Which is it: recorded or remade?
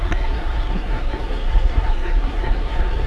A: remade